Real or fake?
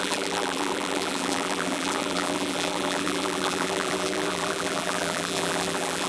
fake